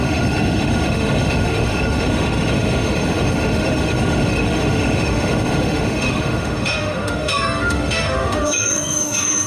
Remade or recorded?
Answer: remade